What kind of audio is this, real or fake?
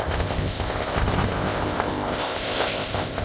fake